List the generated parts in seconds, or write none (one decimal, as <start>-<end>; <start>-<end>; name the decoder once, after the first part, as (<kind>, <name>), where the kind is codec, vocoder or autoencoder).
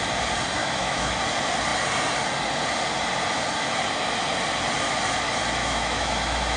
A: 0.6-1.1 (autoencoder, DAC-VAE); 5.6-6.6